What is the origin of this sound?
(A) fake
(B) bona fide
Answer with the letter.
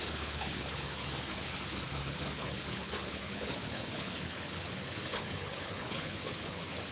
A